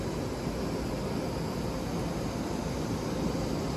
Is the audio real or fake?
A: real